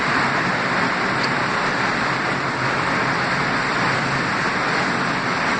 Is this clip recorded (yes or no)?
no